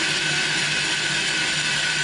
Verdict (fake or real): real